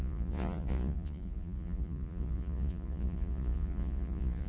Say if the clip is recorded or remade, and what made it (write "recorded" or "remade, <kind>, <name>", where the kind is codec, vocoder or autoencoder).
remade, vocoder, Vocos